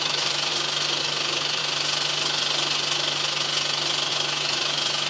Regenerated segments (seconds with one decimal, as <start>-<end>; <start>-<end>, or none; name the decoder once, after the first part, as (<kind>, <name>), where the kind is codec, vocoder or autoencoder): 0.0-0.5 (autoencoder, DAC-VAE); 1.0-1.6; 4.1-5.1